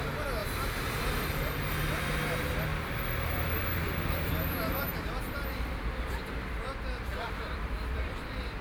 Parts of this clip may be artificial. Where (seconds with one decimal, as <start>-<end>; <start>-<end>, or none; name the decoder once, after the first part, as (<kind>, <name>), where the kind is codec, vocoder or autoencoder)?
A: 0.4-1.0 (vocoder, BigVGAN v2); 2.7-4.3; 7.1-8.6